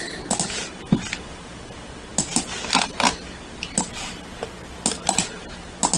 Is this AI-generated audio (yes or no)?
no